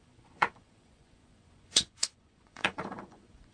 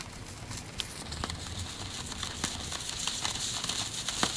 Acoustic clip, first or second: second